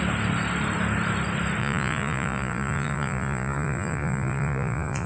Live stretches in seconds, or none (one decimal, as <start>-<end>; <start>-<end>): 0.0-1.6